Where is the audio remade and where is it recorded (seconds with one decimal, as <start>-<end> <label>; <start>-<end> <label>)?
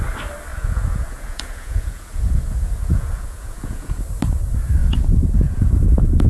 0.0-0.5 recorded; 0.5-4.0 remade; 4.0-4.8 recorded; 4.8-5.7 remade; 5.7-6.3 recorded